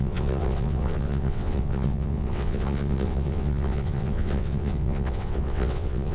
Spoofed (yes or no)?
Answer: yes